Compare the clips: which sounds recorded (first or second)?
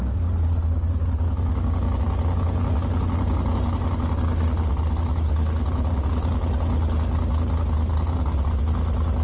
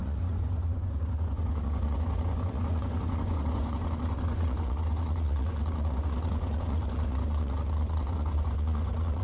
first